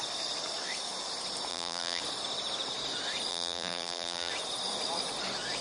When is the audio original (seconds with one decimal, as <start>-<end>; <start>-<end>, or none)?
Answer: 0.0-1.5; 2.0-3.3; 4.3-5.6